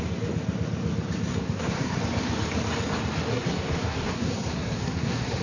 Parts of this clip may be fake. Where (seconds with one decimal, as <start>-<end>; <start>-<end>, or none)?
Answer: 1.3-2.0; 3.3-5.4